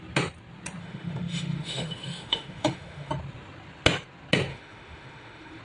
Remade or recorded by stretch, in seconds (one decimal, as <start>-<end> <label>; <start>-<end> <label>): 0.0-0.8 recorded; 0.8-3.1 remade; 3.1-4.5 recorded; 4.5-5.6 remade